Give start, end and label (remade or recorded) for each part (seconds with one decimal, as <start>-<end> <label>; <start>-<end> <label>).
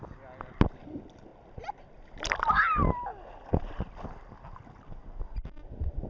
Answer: 0.0-6.1 recorded